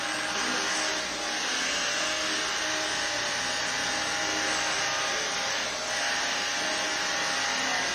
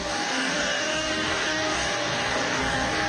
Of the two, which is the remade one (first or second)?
second